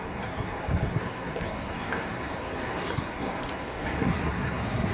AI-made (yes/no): yes